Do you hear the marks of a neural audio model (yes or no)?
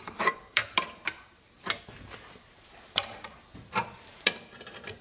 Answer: yes